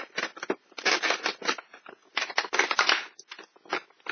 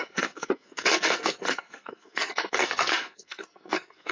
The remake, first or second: second